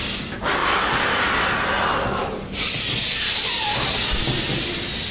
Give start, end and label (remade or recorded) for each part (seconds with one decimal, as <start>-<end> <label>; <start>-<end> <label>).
0.0-5.1 recorded